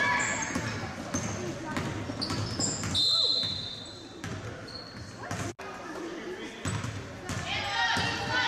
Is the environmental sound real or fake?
real